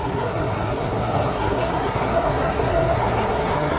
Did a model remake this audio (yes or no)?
yes